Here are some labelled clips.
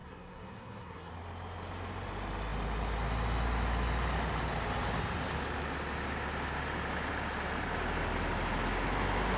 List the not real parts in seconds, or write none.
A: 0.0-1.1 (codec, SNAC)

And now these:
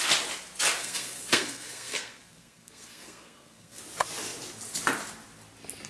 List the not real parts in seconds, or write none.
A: 0.8-3.8 (codec, SNAC)

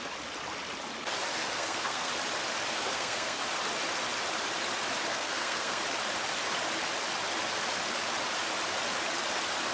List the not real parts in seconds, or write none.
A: 1.4-2.1 (codec, SNAC); 2.7-3.4; 5.1-5.8

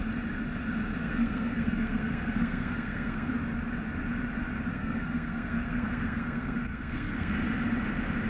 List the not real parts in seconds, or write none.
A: 1.0-3.3 (codec, SNAC); 4.7-7.3